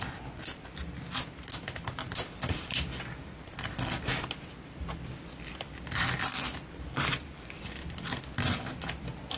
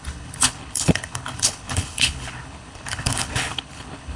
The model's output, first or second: second